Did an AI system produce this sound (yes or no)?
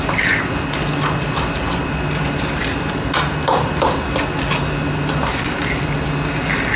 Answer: no